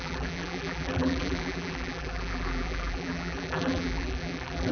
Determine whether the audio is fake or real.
fake